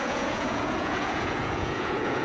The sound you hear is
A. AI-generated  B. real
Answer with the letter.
A